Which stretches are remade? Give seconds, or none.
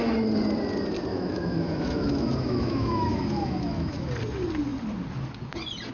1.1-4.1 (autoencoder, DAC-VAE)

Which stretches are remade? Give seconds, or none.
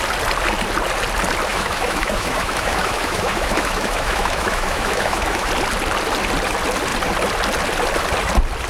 1.5-5.5 (autoencoder, DAC-VAE)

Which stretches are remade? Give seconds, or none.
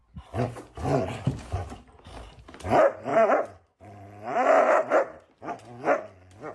3.1-5.5 (vocoder, BigVGAN v2)